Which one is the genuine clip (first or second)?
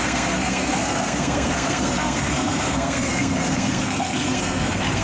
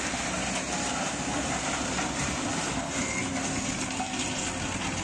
second